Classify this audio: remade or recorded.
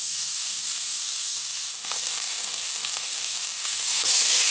remade